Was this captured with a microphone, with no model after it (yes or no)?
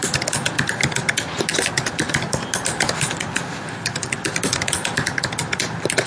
yes